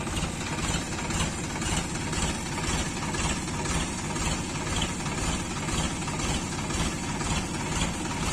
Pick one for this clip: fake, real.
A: real